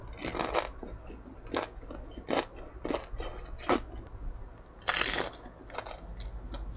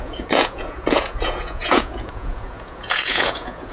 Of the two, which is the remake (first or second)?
second